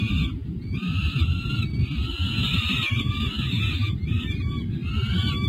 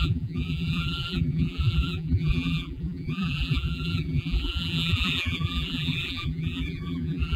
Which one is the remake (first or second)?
second